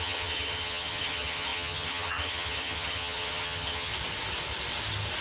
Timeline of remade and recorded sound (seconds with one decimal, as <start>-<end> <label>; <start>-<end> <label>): 0.0-3.9 remade; 3.9-5.2 recorded